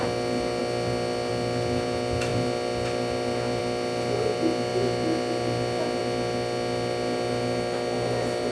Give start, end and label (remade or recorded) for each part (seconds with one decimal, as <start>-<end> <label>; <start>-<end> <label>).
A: 0.0-8.5 recorded